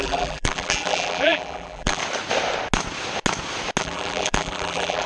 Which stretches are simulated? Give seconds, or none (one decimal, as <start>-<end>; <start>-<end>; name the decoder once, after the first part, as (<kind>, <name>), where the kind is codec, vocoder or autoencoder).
0.0-2.0 (vocoder, BigVGAN v2); 3.8-5.1